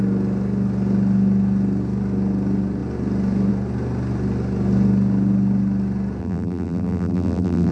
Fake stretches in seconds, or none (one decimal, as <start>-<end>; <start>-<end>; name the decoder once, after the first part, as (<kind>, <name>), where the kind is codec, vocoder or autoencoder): 6.2-7.7 (vocoder, BigVGAN v2)